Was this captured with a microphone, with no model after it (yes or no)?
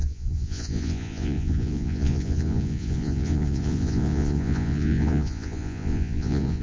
no